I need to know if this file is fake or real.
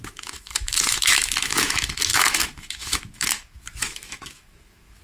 fake